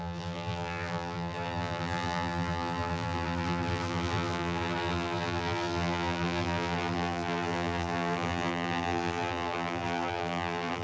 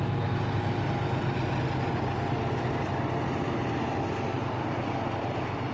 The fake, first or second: first